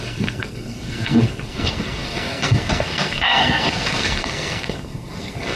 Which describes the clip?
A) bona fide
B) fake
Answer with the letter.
B